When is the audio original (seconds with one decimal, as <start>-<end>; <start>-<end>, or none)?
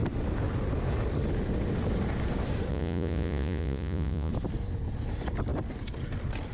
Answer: 0.0-2.7; 4.3-6.5